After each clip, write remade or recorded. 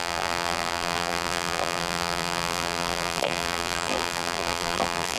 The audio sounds remade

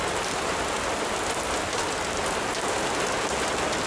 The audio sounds recorded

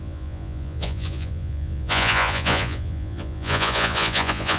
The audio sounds remade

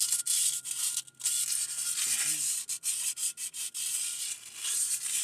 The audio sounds recorded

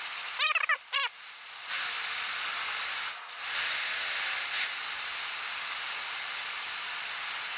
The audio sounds recorded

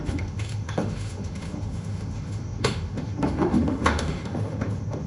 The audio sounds remade